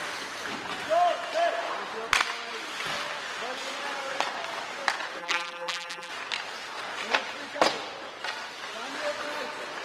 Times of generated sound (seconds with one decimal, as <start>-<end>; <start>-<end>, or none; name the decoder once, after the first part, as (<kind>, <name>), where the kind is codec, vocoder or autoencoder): 5.2-6.1 (vocoder, BigVGAN v2)